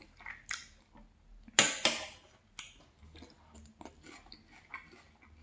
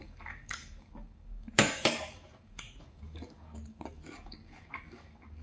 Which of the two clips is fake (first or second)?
second